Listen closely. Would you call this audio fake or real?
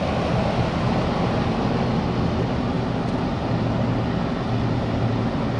real